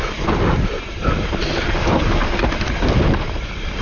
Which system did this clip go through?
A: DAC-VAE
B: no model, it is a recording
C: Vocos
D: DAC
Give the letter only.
B